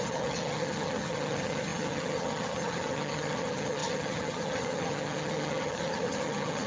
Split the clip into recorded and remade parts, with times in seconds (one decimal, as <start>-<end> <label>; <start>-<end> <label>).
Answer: 0.0-6.7 remade